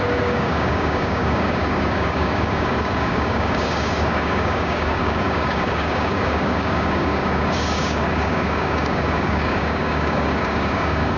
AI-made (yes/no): yes